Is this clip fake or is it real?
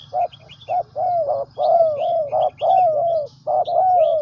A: real